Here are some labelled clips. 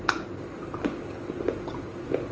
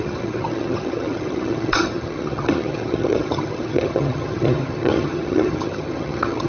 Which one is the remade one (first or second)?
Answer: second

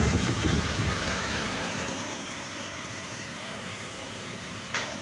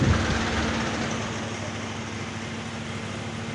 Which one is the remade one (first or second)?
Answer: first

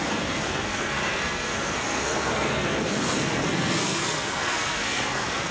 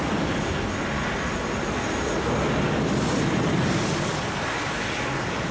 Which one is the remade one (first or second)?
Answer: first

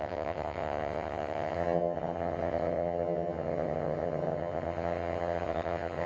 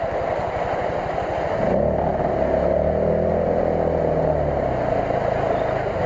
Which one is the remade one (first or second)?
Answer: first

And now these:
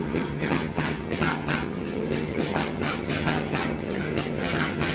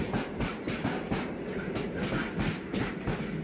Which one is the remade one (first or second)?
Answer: first